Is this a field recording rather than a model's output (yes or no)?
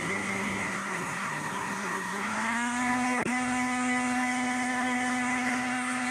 no